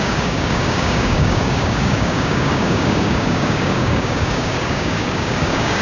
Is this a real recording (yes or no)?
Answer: no